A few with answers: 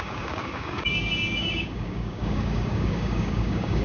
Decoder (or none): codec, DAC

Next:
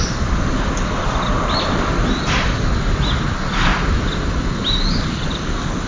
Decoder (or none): none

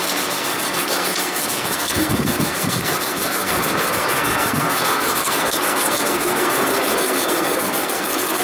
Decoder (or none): codec, SNAC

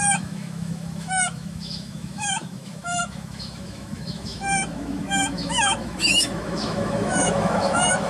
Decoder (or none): autoencoder, DAC-VAE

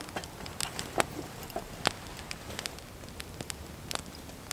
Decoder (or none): none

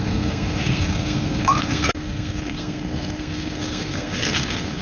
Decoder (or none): codec, SNAC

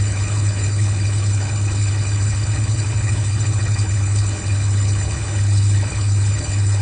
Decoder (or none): codec, HILCodec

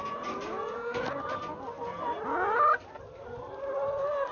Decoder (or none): none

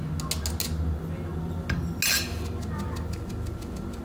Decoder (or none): none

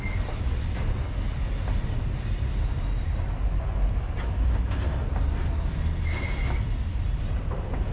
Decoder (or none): none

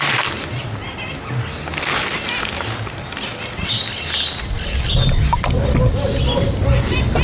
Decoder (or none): none